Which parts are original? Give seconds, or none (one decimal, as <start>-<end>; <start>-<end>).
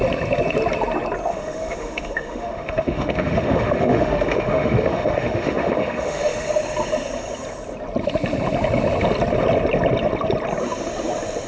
0.0-1.3; 6.5-11.5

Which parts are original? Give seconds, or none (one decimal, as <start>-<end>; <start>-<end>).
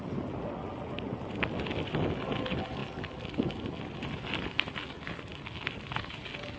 0.0-6.6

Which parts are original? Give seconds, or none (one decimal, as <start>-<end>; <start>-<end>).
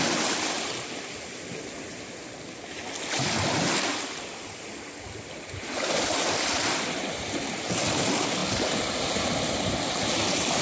0.0-10.6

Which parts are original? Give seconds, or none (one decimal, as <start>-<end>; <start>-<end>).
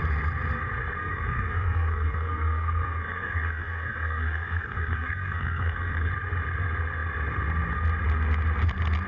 0.0-1.0; 6.1-9.1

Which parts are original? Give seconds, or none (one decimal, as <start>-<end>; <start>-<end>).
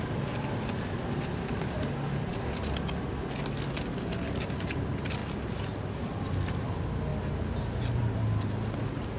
0.0-9.2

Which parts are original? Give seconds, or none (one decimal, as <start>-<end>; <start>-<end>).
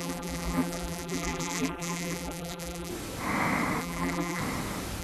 2.9-3.8; 4.4-5.0